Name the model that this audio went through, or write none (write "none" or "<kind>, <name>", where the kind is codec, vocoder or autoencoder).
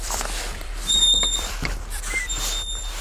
vocoder, BigVGAN v2